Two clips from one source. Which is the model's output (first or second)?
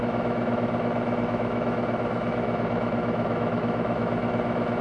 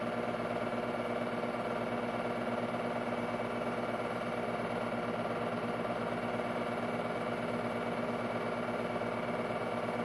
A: first